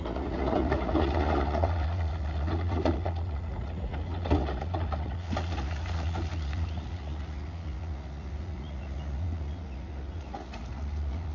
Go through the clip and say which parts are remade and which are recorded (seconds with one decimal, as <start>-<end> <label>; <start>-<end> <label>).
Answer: 0.0-11.3 remade

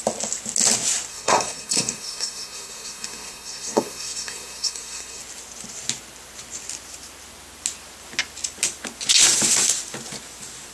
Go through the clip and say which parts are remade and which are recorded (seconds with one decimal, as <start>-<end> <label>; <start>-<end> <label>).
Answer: 0.0-1.1 recorded; 1.1-5.2 remade; 5.2-10.7 recorded

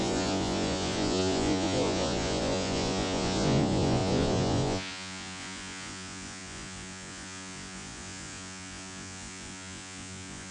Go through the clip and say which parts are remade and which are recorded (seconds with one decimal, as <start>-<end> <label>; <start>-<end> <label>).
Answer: 0.0-10.5 remade

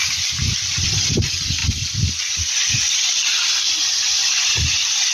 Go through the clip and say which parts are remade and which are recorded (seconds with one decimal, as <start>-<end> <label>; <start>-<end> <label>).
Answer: 0.0-5.1 recorded